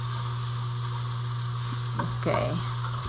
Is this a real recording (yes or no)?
yes